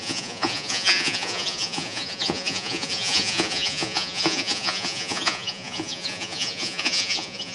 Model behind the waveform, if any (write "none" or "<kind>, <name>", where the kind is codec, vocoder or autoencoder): vocoder, Vocos